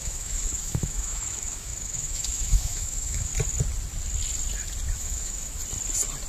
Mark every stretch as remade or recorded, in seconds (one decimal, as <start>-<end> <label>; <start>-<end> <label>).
0.0-3.3 remade; 3.3-5.0 recorded; 5.0-5.6 remade; 5.6-6.3 recorded